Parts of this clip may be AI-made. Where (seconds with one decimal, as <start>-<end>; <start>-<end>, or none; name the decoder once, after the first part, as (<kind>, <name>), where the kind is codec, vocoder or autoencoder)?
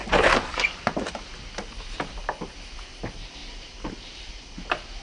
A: 0.0-1.1 (vocoder, BigVGAN v2)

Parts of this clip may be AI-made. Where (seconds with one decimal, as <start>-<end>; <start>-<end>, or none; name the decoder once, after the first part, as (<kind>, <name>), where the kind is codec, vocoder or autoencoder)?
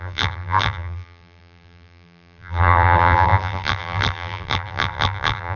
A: 0.0-5.6 (vocoder, BigVGAN v2)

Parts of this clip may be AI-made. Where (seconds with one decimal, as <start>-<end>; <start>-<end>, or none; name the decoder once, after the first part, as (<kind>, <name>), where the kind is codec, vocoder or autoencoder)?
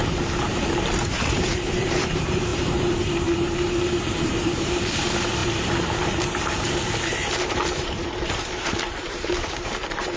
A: 0.0-10.2 (vocoder, BigVGAN v2)